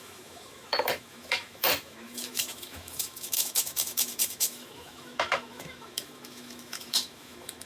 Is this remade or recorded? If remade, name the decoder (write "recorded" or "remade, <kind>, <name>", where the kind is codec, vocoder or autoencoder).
remade, autoencoder, DAC-VAE